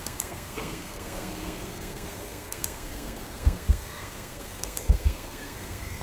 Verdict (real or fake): fake